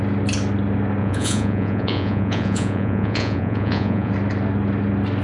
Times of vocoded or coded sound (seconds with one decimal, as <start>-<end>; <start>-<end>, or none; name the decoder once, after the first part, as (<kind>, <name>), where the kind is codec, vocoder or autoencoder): 1.0-4.1 (vocoder, Vocos)